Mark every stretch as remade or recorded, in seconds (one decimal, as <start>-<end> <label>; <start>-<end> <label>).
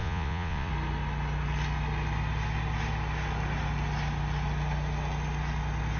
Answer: 0.0-0.7 remade; 0.7-6.0 recorded